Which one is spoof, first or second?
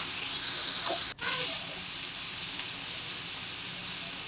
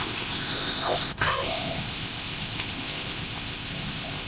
second